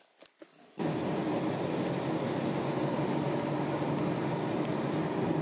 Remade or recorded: recorded